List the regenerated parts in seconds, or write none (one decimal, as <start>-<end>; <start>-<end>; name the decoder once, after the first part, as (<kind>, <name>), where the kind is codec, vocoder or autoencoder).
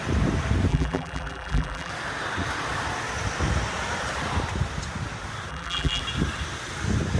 0.7-1.9 (vocoder, BigVGAN v2); 5.5-6.0